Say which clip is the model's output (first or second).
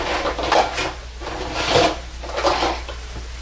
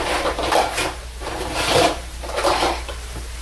second